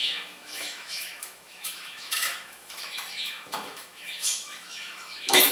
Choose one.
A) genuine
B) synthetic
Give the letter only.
B